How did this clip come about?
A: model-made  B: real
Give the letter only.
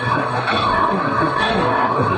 A